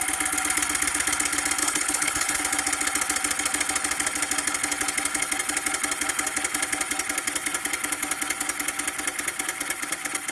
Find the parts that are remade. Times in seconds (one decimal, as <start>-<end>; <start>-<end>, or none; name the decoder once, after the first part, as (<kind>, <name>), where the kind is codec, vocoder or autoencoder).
1.6-2.4 (codec, HILCodec)